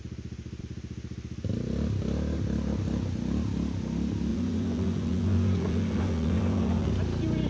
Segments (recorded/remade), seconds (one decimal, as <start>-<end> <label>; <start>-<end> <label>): 0.0-4.3 recorded; 4.3-6.9 remade; 6.9-7.5 recorded